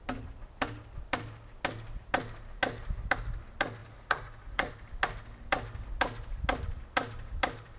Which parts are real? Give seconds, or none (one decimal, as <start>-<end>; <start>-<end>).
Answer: 0.0-3.8; 4.7-7.8